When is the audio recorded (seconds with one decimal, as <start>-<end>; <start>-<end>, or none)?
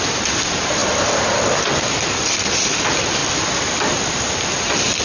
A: 0.0-5.0